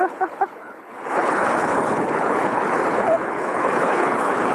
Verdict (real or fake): fake